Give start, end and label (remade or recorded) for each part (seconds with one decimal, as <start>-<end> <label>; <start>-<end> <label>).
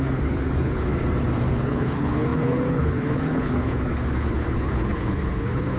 0.0-0.9 remade; 0.9-1.5 recorded; 1.5-5.8 remade